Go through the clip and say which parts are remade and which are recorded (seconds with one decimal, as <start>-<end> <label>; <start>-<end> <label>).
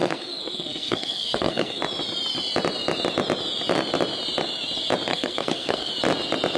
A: 0.0-1.8 remade; 1.8-5.1 recorded; 5.1-5.9 remade; 5.9-6.6 recorded